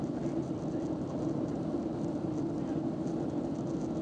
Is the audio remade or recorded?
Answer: recorded